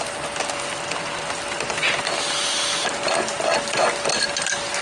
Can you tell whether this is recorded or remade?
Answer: recorded